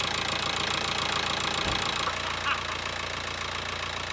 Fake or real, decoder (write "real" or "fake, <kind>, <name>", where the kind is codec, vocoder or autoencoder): real